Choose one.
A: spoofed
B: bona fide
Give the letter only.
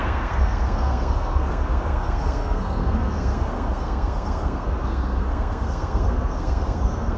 A